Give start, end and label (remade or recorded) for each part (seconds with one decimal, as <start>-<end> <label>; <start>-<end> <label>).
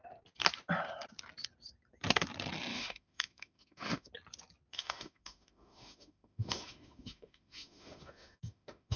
0.0-2.7 recorded; 2.7-4.1 remade; 4.1-4.7 recorded; 4.7-9.0 remade